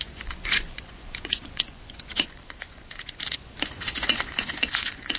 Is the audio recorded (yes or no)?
no